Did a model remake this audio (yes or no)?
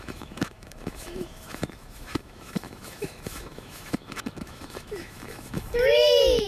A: yes